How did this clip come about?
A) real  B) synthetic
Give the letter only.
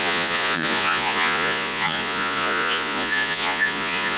B